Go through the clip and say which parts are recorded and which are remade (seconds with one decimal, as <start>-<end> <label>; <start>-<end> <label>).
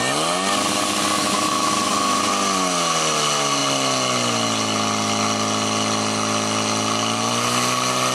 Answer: 0.0-1.2 recorded; 1.2-2.2 remade; 2.2-8.1 recorded